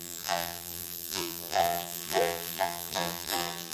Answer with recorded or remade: remade